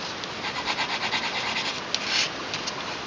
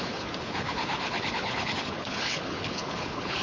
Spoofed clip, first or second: second